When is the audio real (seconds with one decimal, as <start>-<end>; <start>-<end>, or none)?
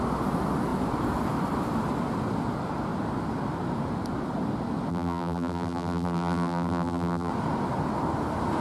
0.0-4.9; 7.3-8.6